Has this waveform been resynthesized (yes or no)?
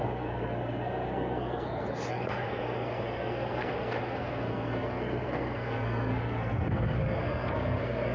yes